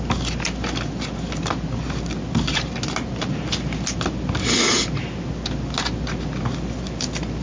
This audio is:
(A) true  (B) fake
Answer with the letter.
A